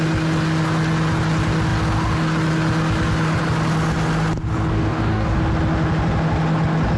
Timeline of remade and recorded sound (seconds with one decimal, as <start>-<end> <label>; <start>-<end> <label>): 0.0-4.7 recorded; 4.7-5.4 remade; 5.4-7.0 recorded